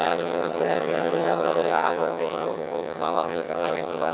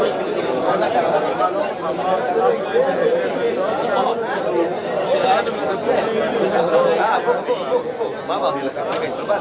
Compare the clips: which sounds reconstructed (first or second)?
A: first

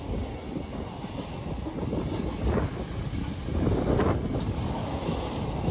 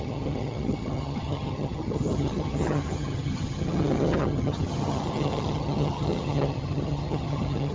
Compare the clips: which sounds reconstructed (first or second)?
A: second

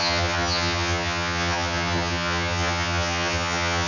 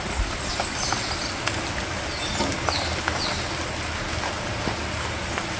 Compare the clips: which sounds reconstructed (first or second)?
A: first